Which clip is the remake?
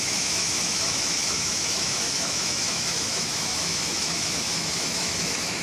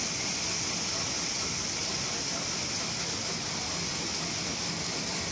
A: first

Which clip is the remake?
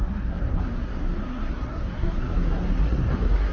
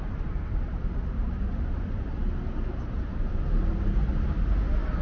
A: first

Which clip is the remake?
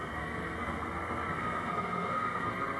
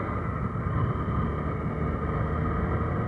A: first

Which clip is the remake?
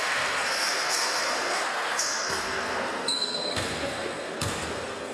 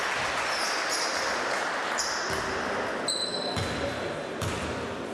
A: first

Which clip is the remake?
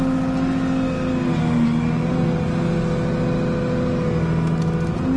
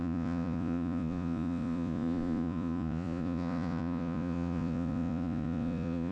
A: second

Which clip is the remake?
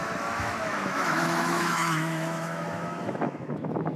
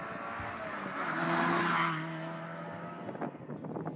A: first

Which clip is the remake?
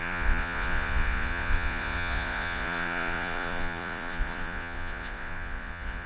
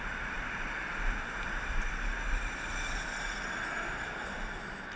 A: first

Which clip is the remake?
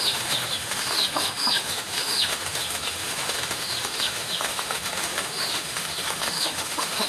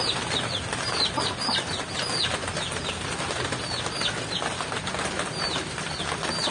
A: first